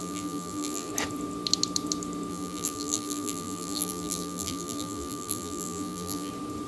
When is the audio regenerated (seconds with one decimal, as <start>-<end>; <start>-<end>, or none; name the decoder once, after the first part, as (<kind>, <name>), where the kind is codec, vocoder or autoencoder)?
0.0-0.9 (vocoder, BigVGAN v2); 2.3-6.3